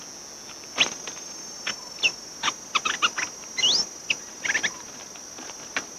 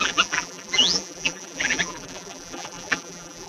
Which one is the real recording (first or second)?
first